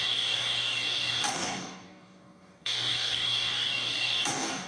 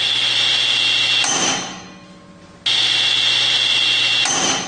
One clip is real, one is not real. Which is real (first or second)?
second